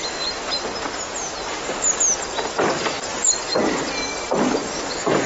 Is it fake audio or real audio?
real